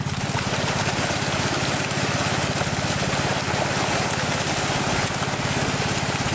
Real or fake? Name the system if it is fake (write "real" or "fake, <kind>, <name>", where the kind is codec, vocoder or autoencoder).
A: real